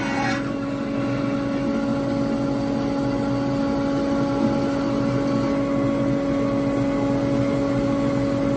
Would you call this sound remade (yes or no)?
no